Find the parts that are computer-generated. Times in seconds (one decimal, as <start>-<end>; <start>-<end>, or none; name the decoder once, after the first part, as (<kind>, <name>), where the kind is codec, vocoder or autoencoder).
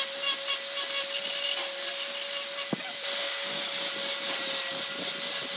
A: 3.2-3.9 (codec, DAC)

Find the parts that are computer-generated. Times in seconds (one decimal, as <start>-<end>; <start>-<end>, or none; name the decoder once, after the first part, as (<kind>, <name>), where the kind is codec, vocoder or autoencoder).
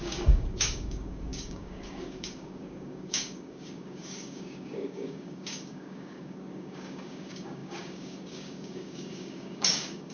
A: 0.0-10.1 (codec, DAC)